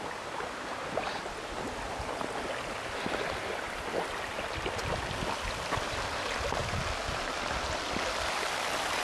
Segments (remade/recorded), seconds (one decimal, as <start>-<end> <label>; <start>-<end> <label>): 0.0-9.0 recorded